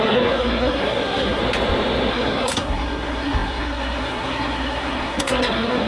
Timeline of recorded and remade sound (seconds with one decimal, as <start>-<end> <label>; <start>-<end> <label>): 0.0-1.4 remade; 1.4-2.1 recorded; 2.1-5.9 remade